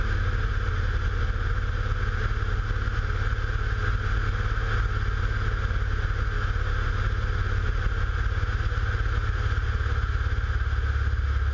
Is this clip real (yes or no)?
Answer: yes